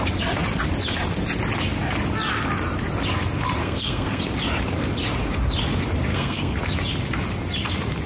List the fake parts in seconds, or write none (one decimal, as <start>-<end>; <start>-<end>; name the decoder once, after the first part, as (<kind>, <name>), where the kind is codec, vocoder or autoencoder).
3.6-4.2 (codec, SNAC); 6.1-6.6

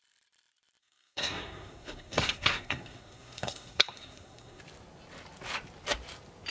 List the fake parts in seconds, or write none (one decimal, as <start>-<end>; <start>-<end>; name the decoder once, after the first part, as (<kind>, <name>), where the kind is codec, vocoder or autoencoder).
0.8-4.6 (codec, SNAC)

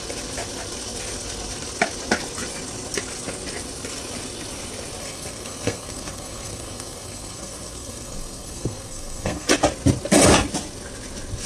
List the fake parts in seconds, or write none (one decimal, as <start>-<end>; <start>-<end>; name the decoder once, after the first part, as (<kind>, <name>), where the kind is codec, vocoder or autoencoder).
5.0-9.5 (codec, SNAC)

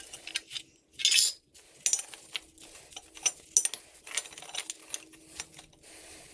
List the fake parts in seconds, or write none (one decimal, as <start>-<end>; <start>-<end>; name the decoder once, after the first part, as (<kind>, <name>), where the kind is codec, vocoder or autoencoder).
none

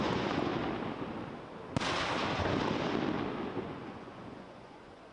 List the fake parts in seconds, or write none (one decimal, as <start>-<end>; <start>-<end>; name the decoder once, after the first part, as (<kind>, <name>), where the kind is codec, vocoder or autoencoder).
0.0-0.5 (vocoder, Vocos); 3.6-5.1

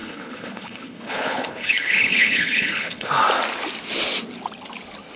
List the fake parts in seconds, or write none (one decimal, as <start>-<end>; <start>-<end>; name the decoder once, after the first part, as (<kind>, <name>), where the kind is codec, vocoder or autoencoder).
0.0-3.1 (codec, HILCodec)